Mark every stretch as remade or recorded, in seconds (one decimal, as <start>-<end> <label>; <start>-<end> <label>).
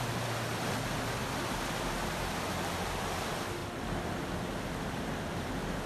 0.0-3.6 remade; 3.6-4.4 recorded; 4.4-5.9 remade